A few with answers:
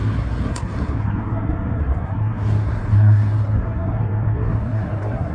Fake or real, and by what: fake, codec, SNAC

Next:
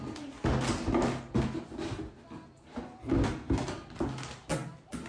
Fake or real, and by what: real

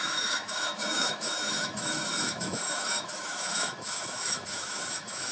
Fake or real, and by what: fake, autoencoder, DAC-VAE